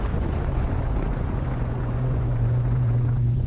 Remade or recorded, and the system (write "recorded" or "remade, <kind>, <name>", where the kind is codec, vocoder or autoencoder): remade, vocoder, Vocos